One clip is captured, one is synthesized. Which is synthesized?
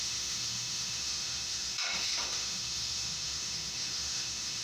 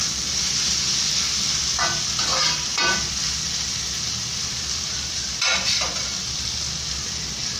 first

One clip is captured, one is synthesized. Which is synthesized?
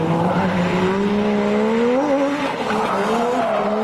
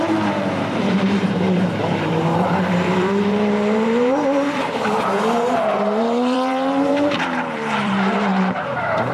second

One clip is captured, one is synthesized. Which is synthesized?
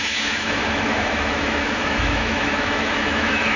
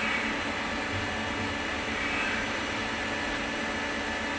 first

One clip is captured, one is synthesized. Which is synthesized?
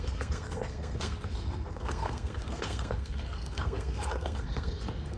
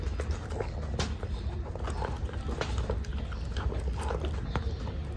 first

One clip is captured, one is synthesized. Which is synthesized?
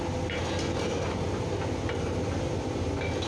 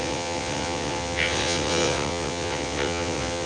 second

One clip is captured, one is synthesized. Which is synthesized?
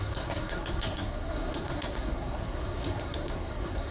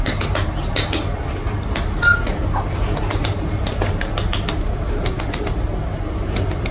first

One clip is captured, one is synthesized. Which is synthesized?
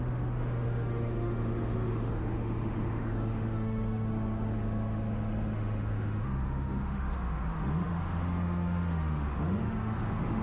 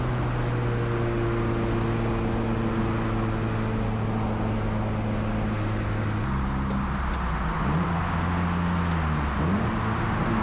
first